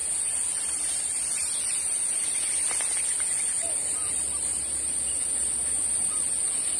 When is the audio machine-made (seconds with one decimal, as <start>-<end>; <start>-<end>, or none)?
0.0-2.5; 3.8-6.2